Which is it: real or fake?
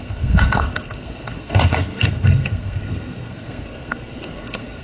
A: fake